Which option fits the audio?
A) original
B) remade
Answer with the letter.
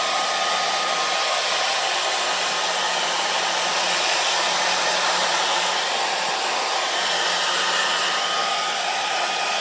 A